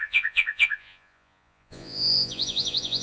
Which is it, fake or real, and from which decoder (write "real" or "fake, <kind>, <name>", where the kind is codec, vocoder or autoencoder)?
fake, vocoder, Vocos